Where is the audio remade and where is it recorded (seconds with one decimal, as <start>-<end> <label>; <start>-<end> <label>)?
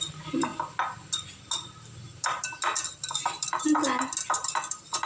0.0-5.1 recorded